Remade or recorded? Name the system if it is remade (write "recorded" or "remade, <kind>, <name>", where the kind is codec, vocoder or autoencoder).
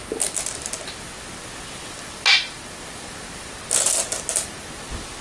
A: recorded